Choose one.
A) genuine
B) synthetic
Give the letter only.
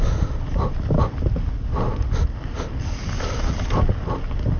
A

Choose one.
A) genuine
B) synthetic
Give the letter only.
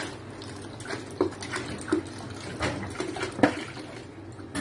A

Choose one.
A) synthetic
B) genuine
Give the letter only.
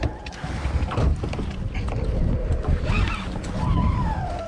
B